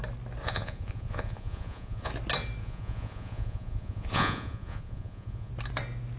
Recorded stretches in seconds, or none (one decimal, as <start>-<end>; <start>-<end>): 0.0-0.4; 2.1-2.6; 5.5-6.2